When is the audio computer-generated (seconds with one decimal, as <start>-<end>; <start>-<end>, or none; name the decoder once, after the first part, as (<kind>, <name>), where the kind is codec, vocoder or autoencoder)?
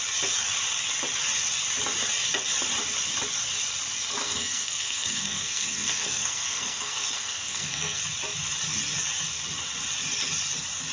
4.2-8.0 (codec, SNAC)